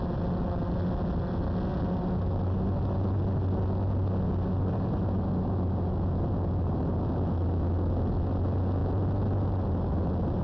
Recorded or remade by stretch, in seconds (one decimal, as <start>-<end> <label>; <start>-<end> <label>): 0.0-10.4 recorded